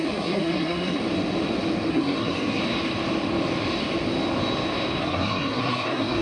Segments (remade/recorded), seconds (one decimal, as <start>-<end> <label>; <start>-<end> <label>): 0.0-1.0 remade; 1.0-1.9 recorded; 1.9-2.6 remade; 2.6-5.0 recorded; 5.0-6.2 remade